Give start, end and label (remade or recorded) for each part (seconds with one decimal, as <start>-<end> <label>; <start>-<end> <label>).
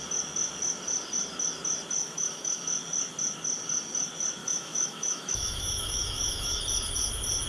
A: 0.0-2.0 recorded; 2.0-2.6 remade; 2.6-4.4 recorded; 4.4-6.6 remade; 6.6-7.5 recorded